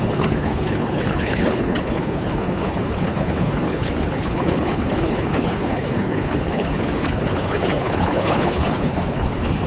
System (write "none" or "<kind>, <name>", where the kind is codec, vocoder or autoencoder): codec, HILCodec